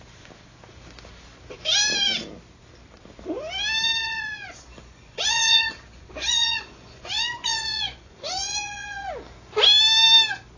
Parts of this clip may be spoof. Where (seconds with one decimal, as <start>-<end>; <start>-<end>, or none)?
4.0-9.1